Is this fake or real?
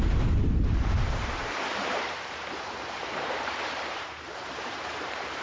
fake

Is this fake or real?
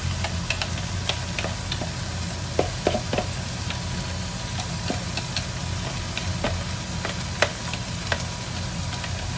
real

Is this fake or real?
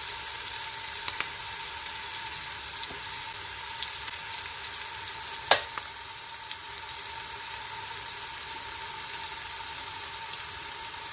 real